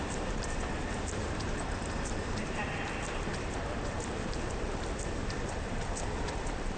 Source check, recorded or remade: remade